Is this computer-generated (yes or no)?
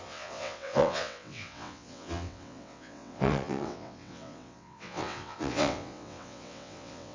yes